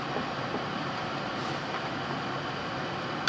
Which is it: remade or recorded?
recorded